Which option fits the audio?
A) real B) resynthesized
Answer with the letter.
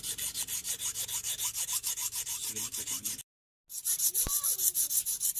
A